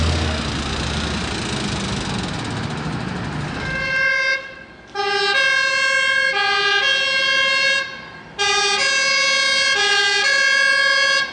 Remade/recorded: recorded